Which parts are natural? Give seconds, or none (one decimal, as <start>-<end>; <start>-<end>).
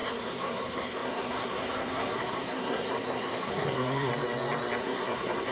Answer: 4.1-4.8